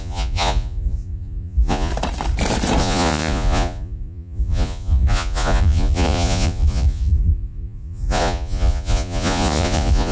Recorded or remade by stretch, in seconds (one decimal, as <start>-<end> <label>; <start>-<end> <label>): 0.0-1.9 remade; 1.9-2.8 recorded; 2.8-10.1 remade